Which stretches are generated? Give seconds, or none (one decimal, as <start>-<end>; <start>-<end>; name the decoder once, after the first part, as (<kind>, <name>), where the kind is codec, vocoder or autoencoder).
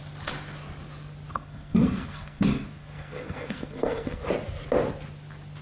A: 1.3-4.2 (codec, SNAC)